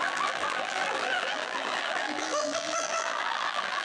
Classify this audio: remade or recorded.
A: remade